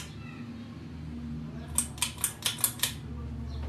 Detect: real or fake real